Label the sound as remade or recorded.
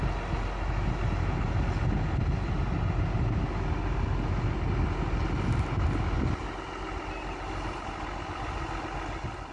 recorded